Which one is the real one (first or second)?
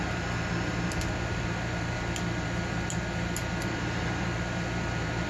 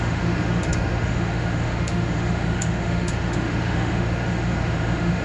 first